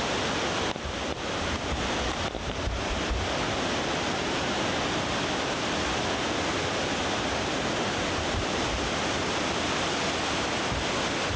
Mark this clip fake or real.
real